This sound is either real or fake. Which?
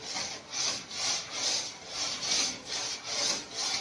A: real